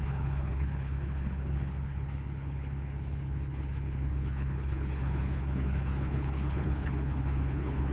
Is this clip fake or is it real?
fake